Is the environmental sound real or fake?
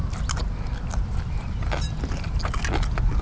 real